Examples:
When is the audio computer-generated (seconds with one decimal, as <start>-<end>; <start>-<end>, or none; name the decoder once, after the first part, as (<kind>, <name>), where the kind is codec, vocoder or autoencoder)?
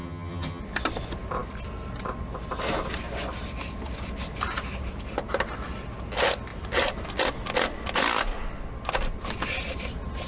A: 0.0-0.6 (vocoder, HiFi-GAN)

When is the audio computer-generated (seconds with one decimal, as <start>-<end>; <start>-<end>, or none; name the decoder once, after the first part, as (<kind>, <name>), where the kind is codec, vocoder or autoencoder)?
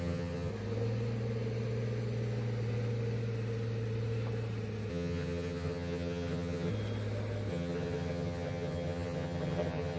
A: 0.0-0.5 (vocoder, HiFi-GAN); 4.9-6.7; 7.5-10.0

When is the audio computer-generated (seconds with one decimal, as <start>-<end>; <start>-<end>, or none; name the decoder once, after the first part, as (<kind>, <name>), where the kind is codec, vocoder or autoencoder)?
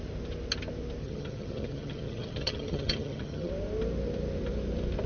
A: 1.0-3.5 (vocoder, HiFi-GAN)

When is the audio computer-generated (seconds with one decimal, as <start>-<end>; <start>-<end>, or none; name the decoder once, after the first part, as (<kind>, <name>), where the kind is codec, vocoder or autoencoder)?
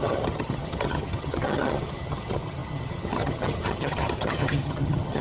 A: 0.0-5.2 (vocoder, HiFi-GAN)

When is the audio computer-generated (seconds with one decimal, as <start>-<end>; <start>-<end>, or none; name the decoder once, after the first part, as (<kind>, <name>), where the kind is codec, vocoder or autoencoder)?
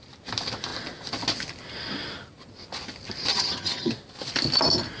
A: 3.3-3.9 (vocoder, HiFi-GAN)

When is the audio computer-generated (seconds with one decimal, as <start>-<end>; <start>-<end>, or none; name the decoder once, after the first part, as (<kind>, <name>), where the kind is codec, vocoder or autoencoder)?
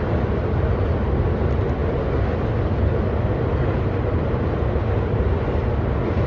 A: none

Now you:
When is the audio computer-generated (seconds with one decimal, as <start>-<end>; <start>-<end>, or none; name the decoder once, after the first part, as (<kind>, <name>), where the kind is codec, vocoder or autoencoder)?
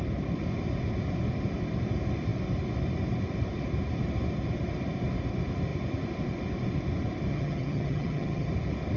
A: 7.3-8.5 (vocoder, HiFi-GAN)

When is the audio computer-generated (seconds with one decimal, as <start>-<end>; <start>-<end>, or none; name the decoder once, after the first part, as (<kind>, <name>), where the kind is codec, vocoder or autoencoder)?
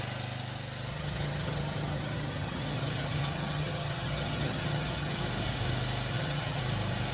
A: 0.9-5.2 (vocoder, HiFi-GAN); 6.1-6.6